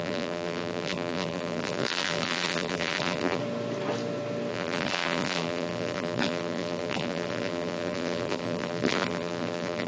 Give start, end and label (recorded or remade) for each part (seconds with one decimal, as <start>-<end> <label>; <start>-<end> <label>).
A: 0.0-3.4 remade; 3.4-4.5 recorded; 4.5-9.9 remade